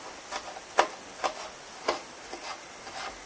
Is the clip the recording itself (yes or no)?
yes